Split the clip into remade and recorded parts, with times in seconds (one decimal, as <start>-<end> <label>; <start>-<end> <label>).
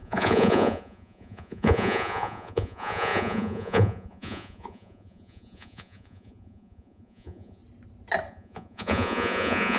0.0-7.6 remade; 7.6-8.3 recorded; 8.3-9.8 remade